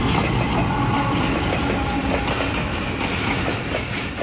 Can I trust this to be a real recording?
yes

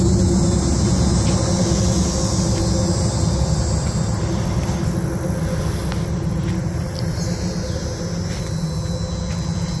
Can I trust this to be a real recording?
yes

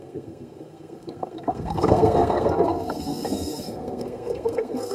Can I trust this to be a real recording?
no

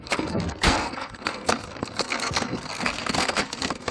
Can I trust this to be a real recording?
no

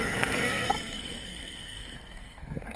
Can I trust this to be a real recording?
no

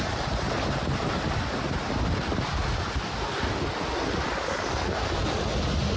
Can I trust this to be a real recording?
yes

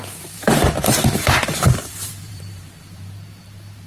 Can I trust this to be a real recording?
no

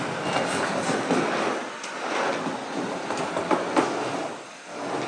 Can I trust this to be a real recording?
yes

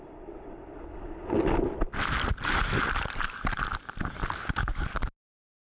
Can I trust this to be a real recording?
yes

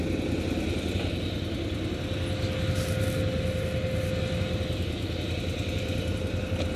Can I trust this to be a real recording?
yes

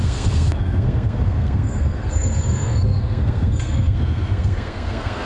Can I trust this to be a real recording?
no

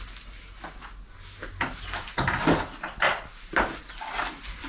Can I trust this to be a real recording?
yes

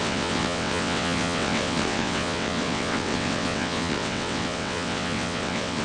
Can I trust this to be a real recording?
no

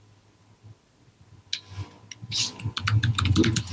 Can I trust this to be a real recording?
yes